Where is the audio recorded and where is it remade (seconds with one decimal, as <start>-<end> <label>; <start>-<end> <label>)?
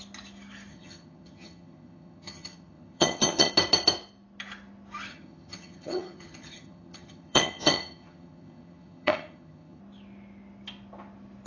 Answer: 0.0-0.7 recorded; 0.7-3.5 remade; 3.5-5.1 recorded; 5.1-9.8 remade; 9.8-11.5 recorded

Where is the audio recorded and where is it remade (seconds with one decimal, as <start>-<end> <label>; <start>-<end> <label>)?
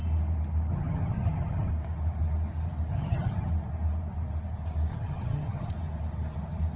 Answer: 0.0-0.7 recorded; 0.7-1.7 remade; 1.7-2.9 recorded; 2.9-3.5 remade; 3.5-4.9 recorded; 4.9-5.7 remade; 5.7-6.8 recorded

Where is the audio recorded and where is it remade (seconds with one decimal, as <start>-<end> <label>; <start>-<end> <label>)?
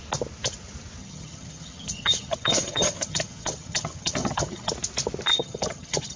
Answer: 0.0-1.0 recorded; 1.0-4.7 remade; 4.7-5.3 recorded; 5.3-6.2 remade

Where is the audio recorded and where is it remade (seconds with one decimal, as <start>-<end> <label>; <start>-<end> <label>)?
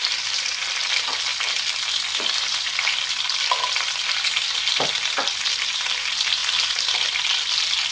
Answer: 0.0-7.9 recorded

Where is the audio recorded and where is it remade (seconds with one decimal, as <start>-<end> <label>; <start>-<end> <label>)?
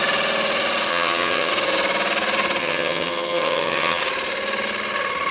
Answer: 0.0-0.9 recorded; 0.9-1.5 remade; 1.5-2.6 recorded; 2.6-4.0 remade; 4.0-5.3 recorded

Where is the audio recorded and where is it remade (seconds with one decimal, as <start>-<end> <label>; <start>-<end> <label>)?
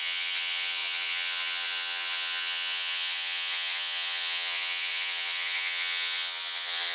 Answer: 0.0-6.9 remade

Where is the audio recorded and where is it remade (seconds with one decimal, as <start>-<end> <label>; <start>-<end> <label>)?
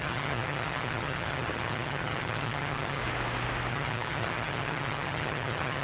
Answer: 0.0-3.0 remade; 3.0-3.7 recorded; 3.7-5.8 remade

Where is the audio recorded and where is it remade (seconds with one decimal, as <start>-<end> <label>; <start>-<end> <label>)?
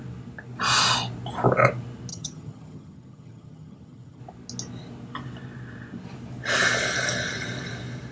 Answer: 0.0-2.1 recorded; 2.1-4.2 remade; 4.2-8.1 recorded